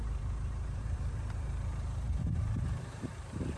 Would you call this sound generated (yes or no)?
yes